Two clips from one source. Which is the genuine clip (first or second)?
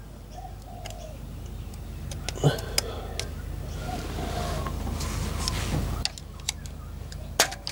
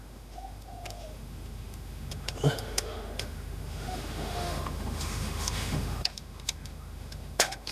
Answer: first